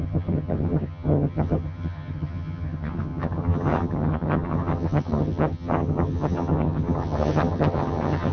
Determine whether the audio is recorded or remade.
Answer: remade